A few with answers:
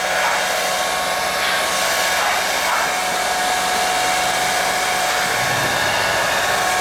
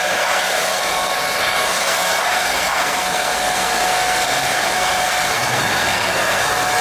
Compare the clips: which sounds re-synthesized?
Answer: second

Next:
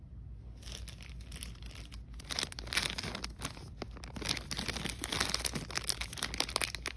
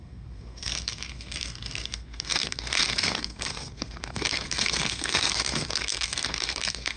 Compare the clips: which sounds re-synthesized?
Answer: second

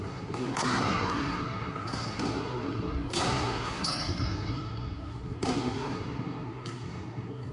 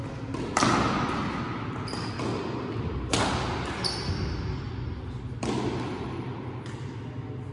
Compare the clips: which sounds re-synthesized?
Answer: first